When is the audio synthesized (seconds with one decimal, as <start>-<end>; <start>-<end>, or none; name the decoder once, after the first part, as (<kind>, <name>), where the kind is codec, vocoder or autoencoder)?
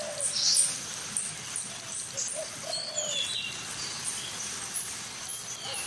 none